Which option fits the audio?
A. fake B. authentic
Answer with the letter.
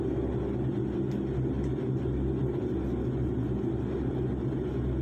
B